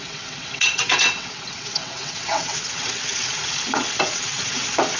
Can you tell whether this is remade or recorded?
remade